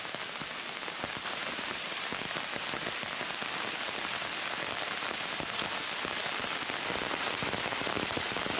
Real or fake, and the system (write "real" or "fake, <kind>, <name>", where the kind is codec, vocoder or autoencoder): real